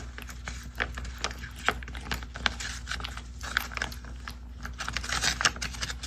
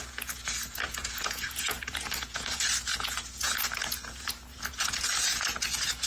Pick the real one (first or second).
first